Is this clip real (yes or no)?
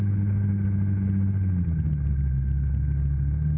yes